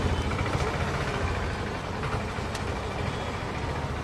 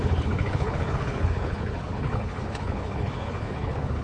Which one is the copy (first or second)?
second